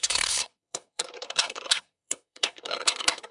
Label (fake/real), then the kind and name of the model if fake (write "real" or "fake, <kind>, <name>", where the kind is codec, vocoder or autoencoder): fake, codec, SNAC